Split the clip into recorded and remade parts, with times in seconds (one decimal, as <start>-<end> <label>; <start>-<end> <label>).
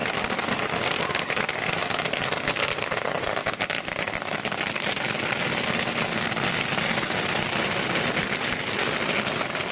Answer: 0.0-9.7 recorded